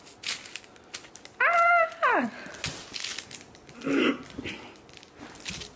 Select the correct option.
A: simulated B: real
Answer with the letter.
B